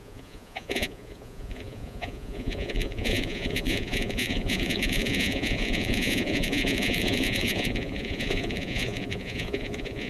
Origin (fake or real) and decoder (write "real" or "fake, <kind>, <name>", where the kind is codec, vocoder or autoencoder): fake, vocoder, Vocos